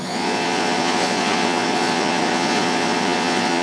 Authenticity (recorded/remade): remade